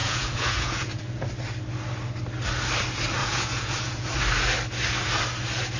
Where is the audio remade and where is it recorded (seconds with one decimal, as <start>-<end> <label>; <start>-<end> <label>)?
0.0-1.0 remade; 1.0-3.2 recorded; 3.2-4.2 remade; 4.2-5.8 recorded